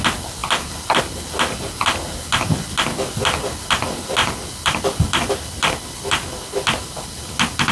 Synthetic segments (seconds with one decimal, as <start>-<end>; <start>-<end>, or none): 4.2-6.8